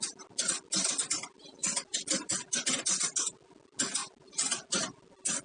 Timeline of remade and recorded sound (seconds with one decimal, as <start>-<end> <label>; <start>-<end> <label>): 0.0-1.6 recorded; 1.6-2.3 remade; 2.3-5.4 recorded